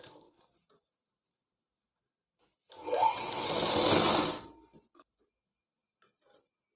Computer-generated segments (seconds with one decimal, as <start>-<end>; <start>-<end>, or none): 2.8-3.4